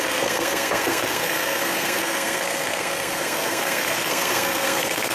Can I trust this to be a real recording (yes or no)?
no